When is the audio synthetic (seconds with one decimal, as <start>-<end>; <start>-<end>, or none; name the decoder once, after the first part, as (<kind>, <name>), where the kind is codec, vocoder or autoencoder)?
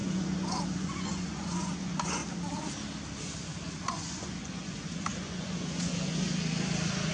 0.0-2.2 (vocoder, Vocos); 3.8-6.3